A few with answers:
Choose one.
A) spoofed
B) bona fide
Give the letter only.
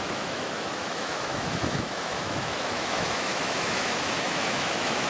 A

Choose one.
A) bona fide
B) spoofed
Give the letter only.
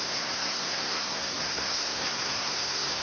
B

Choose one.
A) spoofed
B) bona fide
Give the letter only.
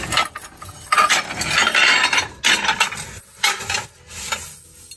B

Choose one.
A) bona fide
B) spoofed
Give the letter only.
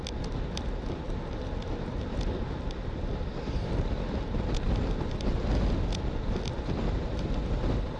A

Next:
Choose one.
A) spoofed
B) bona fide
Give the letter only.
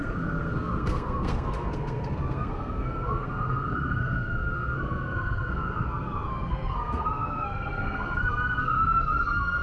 A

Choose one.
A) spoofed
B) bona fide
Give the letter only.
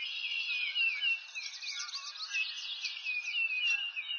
B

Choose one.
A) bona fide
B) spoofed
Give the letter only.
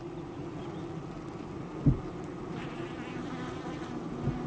A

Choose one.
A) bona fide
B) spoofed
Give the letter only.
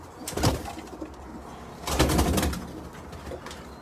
A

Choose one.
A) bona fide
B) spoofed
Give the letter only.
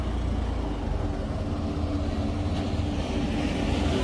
A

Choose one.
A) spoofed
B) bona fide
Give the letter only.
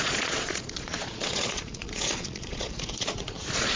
A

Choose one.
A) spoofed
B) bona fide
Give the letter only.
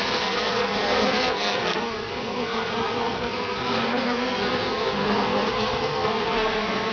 A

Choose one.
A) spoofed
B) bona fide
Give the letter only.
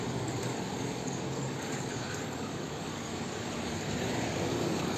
A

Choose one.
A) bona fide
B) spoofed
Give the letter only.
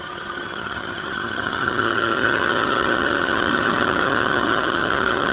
B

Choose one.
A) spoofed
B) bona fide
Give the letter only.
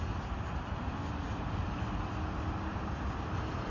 B